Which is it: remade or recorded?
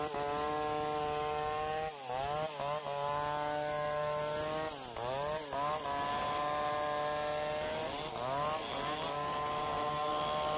recorded